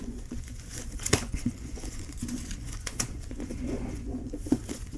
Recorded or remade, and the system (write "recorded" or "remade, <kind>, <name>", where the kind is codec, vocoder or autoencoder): remade, vocoder, Vocos